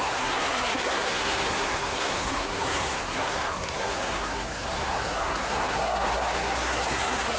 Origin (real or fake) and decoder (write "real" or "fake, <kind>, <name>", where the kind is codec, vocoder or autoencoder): fake, codec, SNAC